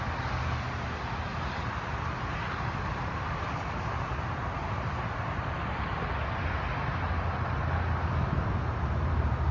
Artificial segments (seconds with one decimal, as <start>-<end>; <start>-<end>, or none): 1.3-5.8